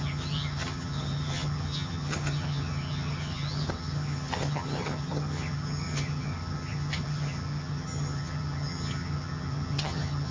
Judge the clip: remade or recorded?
remade